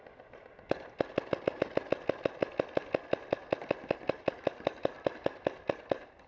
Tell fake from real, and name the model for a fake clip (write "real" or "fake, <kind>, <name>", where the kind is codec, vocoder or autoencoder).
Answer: real